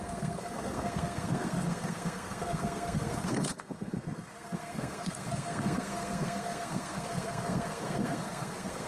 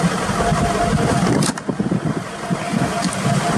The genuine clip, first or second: second